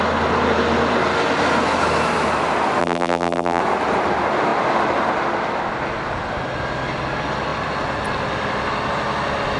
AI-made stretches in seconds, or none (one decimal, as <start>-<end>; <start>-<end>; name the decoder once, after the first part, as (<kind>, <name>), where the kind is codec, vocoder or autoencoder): 2.8-3.6 (vocoder, BigVGAN v2)